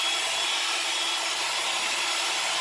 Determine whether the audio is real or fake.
real